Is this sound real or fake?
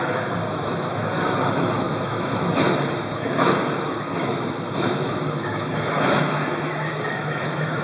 fake